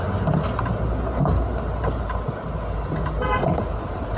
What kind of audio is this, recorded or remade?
recorded